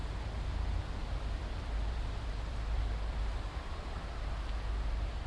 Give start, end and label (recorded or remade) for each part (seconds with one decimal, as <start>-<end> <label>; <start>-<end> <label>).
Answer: 0.0-1.0 recorded; 1.0-4.1 remade; 4.1-5.3 recorded